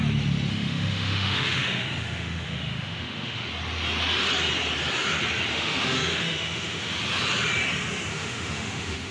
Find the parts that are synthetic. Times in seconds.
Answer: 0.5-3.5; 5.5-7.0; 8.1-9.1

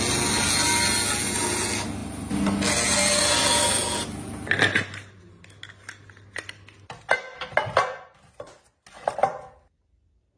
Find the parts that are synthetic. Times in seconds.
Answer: none

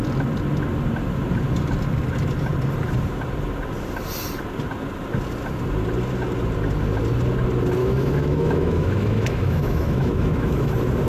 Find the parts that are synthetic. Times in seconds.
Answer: 7.8-10.7